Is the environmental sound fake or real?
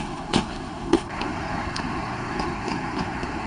fake